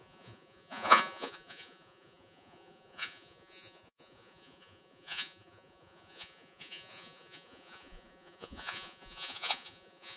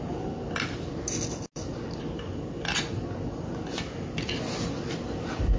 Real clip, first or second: second